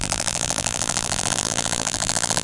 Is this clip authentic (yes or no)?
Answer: no